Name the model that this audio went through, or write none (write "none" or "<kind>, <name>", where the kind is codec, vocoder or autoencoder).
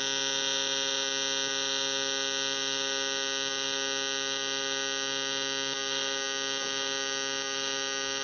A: none